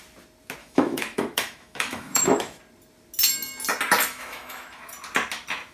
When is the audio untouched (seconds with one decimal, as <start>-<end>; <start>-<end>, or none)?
0.0-0.6; 2.6-4.1; 4.9-5.7